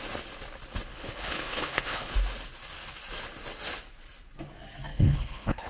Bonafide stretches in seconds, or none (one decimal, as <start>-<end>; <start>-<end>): 0.0-0.9; 2.1-4.9